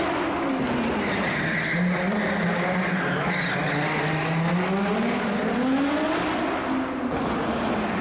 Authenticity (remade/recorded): recorded